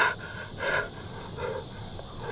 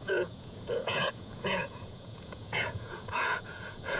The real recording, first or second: first